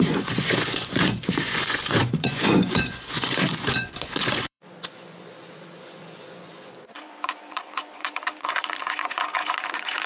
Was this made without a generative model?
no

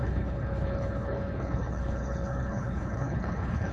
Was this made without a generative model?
no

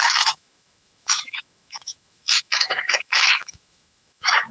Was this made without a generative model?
no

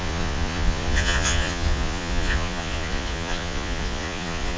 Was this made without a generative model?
no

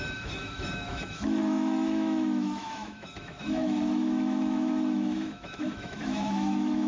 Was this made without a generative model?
no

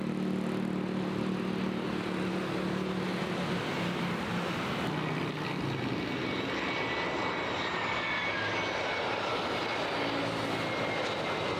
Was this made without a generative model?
yes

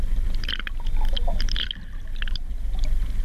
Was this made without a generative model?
yes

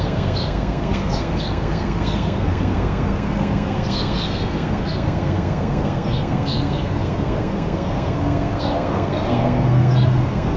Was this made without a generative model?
no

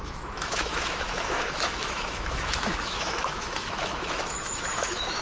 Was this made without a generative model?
no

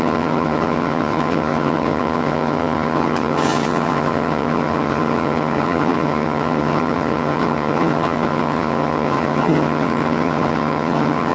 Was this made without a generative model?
no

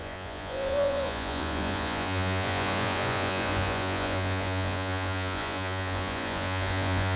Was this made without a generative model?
no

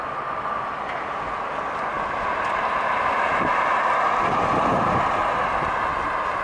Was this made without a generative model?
yes